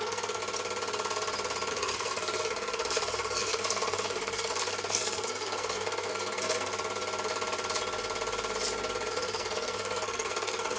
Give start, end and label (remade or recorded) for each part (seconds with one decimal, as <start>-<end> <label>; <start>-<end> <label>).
0.0-0.4 remade; 0.4-1.7 recorded; 1.7-6.7 remade; 6.7-9.1 recorded; 9.1-10.8 remade